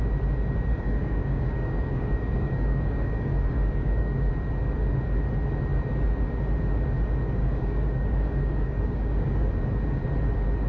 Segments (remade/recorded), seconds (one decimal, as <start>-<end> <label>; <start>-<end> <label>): 0.0-0.7 recorded; 0.7-4.3 remade; 4.3-7.4 recorded; 7.4-9.5 remade; 9.5-10.7 recorded